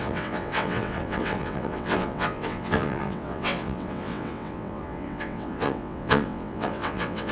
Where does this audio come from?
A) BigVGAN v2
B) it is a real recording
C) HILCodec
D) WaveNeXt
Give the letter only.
D